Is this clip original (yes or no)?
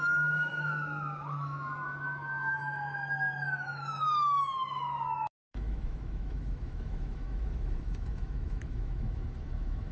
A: no